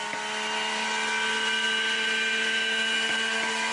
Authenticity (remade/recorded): recorded